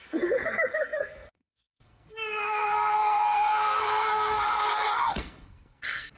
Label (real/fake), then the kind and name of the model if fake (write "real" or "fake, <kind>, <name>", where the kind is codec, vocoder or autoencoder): fake, codec, SNAC